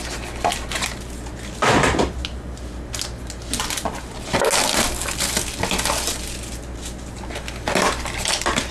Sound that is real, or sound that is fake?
real